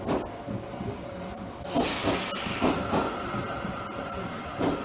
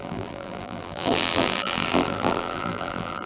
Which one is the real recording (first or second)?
first